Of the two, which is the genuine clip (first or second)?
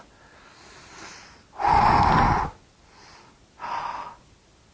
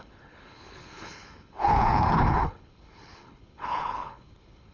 first